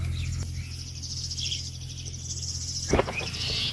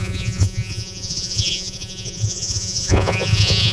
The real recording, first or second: first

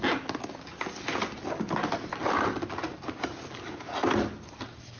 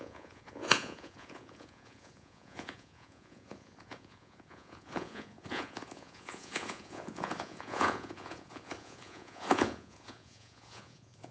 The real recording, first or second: first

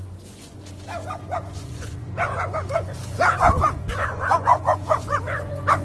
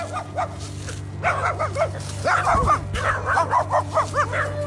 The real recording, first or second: second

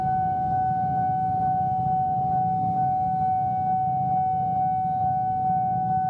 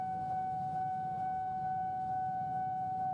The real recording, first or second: first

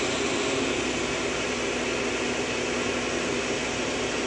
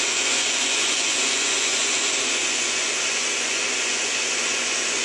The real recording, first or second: first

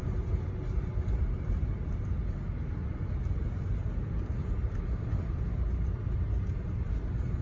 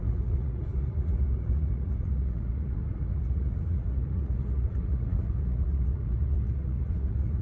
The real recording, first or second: first